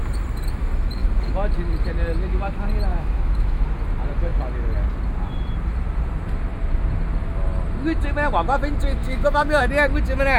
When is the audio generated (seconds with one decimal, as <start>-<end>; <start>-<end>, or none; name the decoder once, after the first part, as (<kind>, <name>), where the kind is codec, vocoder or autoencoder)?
2.9-3.6 (autoencoder, DAC-VAE); 9.0-9.6